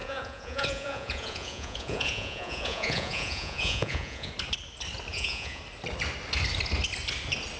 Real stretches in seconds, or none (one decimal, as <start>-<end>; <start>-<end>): 4.3-5.1; 5.6-7.6